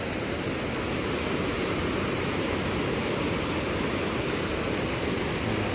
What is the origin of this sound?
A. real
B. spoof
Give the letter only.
A